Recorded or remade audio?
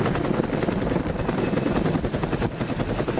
recorded